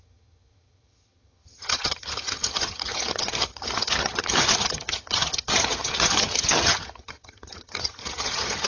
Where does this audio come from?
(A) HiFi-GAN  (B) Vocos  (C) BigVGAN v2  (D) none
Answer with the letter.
A